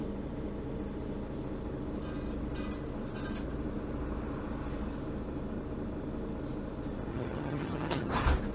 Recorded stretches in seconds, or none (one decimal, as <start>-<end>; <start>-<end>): 0.0-7.1; 8.1-8.5